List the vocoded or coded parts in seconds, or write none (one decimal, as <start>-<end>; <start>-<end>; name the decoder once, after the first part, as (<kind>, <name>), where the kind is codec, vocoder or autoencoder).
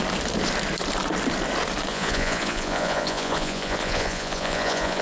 1.9-5.0 (vocoder, Vocos)